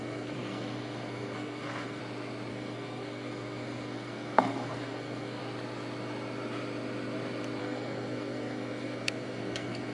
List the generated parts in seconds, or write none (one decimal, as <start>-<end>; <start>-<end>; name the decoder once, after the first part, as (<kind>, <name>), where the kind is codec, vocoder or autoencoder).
0.0-2.0 (codec, SNAC); 2.5-5.4; 7.6-9.9